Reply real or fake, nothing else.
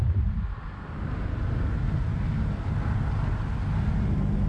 real